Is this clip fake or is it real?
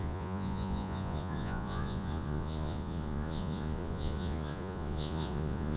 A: fake